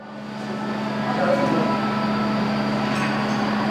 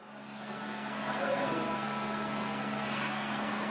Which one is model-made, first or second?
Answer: second